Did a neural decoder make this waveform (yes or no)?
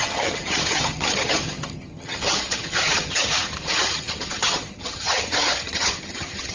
yes